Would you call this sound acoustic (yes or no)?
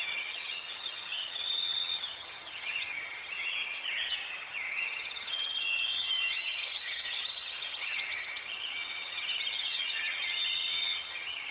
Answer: no